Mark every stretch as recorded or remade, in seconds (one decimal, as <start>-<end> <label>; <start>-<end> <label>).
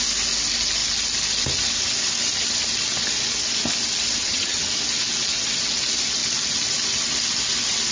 0.0-4.2 recorded; 4.2-4.7 remade; 4.7-7.9 recorded